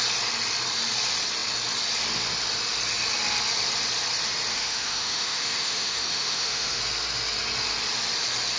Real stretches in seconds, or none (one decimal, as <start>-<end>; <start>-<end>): 0.0-4.5; 6.8-8.6